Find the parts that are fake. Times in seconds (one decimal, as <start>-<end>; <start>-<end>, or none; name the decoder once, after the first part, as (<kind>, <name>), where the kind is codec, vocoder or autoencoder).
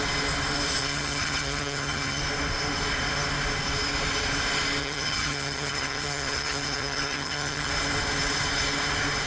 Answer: 0.8-2.2 (vocoder, HiFi-GAN); 4.8-7.7